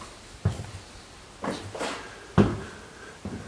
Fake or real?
real